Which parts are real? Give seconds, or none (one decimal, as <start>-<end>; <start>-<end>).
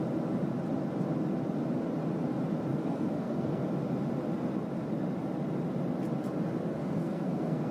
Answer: 0.0-2.7; 3.6-6.8